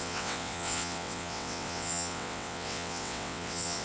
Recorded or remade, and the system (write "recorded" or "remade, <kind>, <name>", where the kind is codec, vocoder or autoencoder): remade, vocoder, WaveNeXt